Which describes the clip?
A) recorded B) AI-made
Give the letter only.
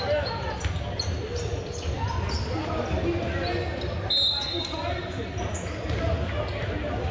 A